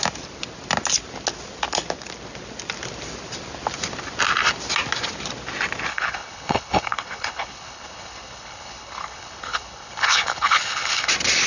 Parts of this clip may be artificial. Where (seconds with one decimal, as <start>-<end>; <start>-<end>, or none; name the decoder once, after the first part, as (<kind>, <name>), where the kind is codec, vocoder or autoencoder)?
5.9-11.1 (codec, HILCodec)